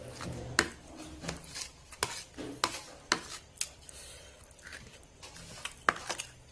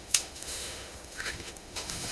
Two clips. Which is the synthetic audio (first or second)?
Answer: second